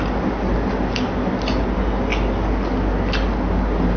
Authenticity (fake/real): real